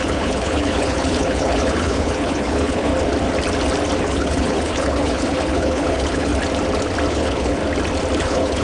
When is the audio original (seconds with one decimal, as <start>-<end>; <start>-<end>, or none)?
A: 2.9-4.0; 6.3-7.1; 7.6-8.2